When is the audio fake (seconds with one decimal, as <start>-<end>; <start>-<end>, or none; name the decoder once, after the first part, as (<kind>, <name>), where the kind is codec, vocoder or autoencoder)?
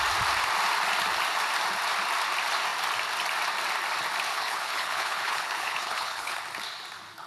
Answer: 4.3-6.4 (codec, HILCodec)